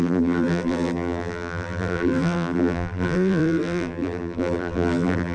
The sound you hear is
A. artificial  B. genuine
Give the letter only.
A